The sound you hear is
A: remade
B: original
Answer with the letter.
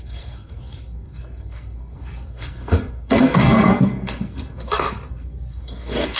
A